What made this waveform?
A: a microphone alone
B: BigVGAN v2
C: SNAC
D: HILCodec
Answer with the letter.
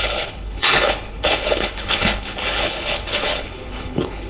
D